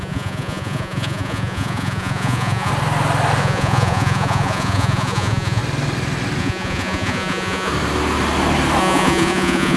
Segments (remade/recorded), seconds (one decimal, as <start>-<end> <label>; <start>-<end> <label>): 0.0-2.7 remade; 2.7-3.4 recorded; 3.4-5.6 remade; 5.6-6.4 recorded; 6.4-7.7 remade; 7.7-8.8 recorded; 8.8-9.8 remade